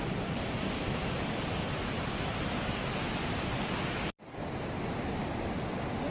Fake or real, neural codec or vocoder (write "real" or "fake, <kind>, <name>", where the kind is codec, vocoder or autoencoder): real